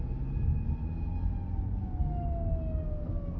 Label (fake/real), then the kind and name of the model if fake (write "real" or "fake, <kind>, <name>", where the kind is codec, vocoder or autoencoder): real